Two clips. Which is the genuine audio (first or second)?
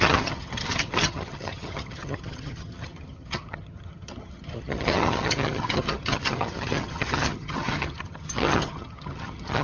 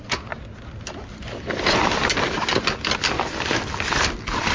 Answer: second